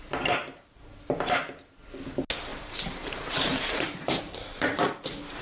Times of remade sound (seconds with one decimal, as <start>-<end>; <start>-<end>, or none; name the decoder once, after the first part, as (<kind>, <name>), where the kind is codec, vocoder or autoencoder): 0.4-1.4 (vocoder, BigVGAN v2); 2.5-4.9